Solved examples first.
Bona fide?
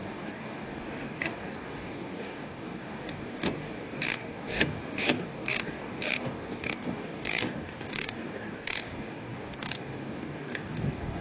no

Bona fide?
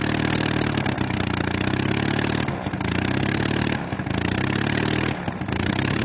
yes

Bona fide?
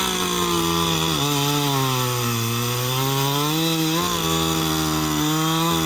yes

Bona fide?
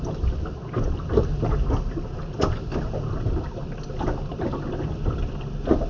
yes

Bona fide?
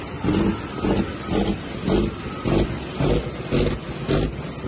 yes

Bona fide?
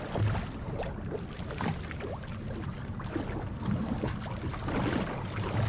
yes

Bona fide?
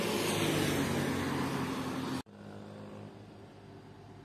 yes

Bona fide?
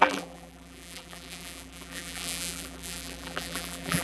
no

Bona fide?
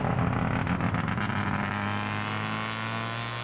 yes